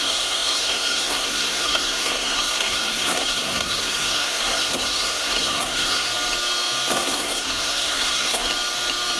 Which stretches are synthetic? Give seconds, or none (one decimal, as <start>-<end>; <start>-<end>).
0.0-6.1; 6.9-8.5